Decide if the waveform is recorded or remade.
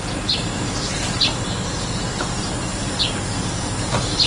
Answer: recorded